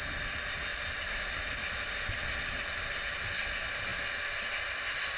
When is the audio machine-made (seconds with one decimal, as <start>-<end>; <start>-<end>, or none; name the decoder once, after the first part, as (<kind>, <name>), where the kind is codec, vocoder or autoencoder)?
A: 0.7-2.6 (vocoder, BigVGAN v2)